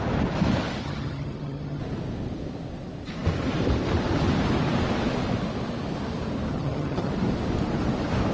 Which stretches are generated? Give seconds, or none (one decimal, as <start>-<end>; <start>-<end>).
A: 0.8-1.8; 6.5-7.1